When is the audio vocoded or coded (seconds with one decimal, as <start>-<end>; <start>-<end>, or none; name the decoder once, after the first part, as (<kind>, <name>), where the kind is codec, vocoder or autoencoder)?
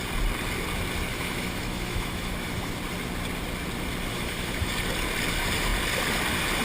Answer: 1.1-2.7 (autoencoder, DAC-VAE); 4.1-4.7